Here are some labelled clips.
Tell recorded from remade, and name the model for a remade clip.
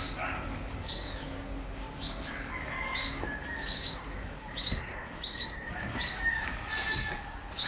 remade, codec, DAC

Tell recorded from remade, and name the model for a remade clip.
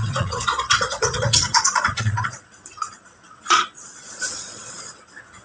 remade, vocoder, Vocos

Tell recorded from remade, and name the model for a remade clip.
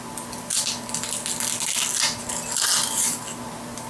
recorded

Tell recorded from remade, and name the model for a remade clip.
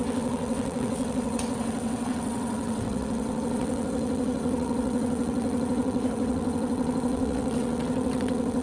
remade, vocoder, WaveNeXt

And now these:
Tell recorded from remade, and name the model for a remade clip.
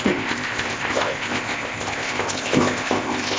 remade, codec, ZipCodec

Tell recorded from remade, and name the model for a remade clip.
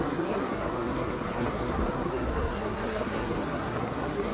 remade, codec, SNAC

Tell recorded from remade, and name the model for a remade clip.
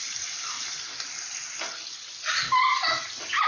recorded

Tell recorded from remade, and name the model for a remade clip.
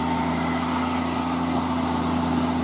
recorded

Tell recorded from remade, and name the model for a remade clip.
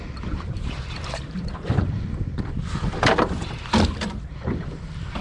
remade, vocoder, BigVGAN v2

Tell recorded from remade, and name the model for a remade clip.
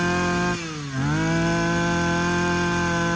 recorded